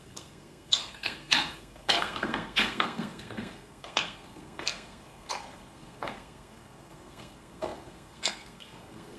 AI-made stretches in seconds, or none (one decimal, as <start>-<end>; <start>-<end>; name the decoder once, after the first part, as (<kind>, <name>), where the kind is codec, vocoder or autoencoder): 0.0-9.2 (codec, SNAC)